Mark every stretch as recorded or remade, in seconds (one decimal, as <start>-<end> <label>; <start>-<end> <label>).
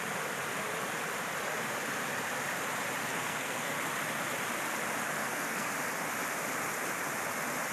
0.0-3.0 recorded; 3.0-3.7 remade; 3.7-5.2 recorded; 5.2-5.7 remade; 5.7-7.7 recorded